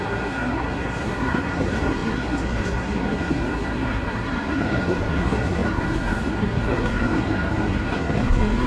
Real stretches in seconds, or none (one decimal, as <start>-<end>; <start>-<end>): none